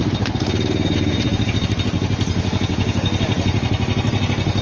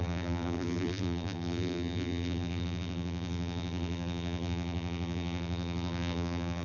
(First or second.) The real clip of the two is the first